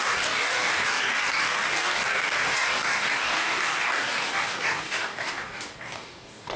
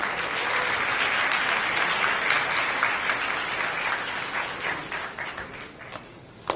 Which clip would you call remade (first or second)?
first